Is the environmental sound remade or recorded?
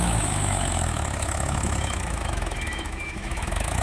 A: remade